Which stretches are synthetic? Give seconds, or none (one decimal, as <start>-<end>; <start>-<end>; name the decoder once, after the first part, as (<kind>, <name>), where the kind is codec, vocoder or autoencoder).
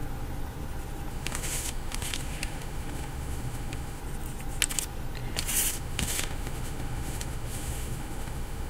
1.1-4.0 (autoencoder, DAC-VAE); 5.7-8.7